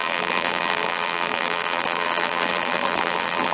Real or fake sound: fake